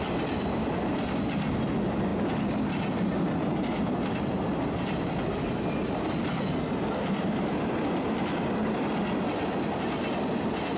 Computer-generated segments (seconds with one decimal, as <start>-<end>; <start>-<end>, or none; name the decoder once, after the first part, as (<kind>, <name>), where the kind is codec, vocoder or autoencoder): none